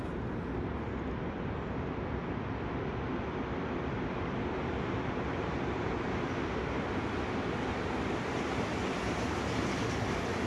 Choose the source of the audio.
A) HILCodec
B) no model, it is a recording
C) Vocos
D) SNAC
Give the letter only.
B